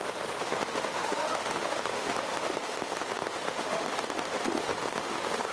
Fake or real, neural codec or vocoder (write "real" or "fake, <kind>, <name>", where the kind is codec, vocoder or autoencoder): fake, autoencoder, DAC-VAE